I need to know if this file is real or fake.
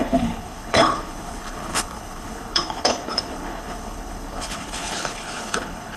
fake